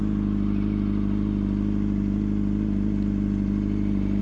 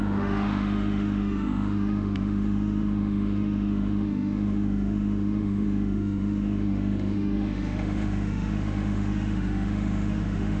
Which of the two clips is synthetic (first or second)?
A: second